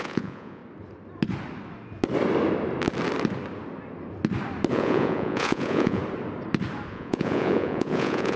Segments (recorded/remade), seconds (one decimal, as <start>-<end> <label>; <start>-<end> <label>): 0.0-0.6 remade; 0.6-4.7 recorded; 4.7-6.0 remade; 6.0-6.9 recorded; 6.9-8.4 remade